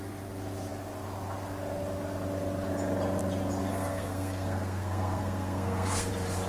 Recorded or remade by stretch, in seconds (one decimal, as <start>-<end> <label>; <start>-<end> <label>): 0.0-3.6 recorded; 3.6-6.1 remade; 6.1-6.5 recorded